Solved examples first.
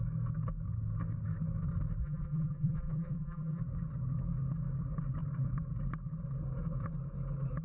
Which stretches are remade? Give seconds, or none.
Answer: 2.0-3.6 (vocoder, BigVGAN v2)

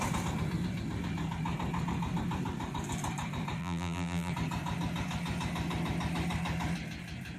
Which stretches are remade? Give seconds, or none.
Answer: 3.6-4.3 (vocoder, BigVGAN v2)

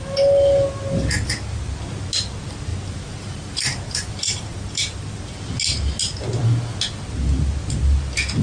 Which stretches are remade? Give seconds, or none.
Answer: 2.7-5.4 (vocoder, BigVGAN v2)

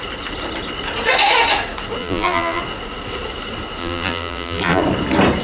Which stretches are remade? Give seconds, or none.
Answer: 2.0-2.6 (vocoder, BigVGAN v2); 3.8-4.8

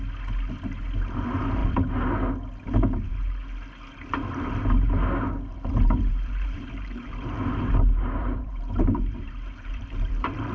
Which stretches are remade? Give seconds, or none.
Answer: 5.5-10.5 (vocoder, BigVGAN v2)

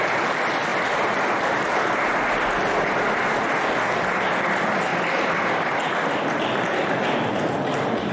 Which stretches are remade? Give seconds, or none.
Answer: 4.9-8.1 (vocoder, BigVGAN v2)